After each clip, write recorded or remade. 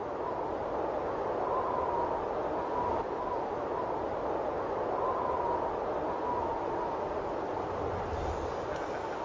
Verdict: recorded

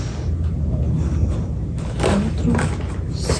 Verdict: recorded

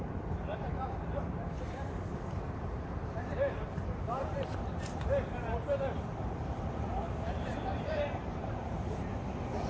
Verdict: remade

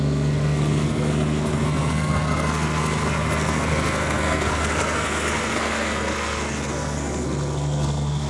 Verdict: remade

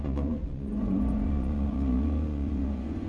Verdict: remade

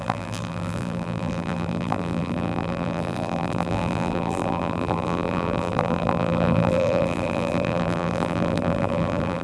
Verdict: remade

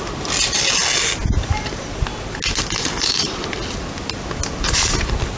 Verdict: recorded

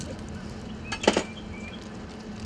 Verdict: recorded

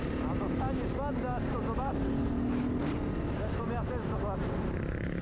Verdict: recorded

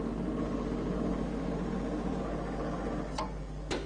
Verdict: recorded